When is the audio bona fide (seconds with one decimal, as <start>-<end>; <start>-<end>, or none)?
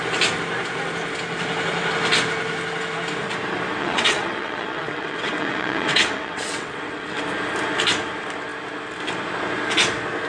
0.0-3.8; 7.2-10.3